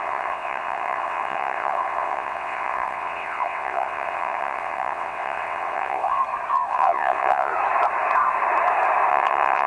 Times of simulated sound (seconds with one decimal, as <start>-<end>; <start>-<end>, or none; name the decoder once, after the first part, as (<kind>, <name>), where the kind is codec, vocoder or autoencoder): 0.0-6.2 (vocoder, WaveNeXt); 6.7-7.5; 9.1-9.7